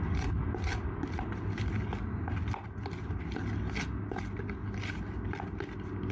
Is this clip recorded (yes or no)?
yes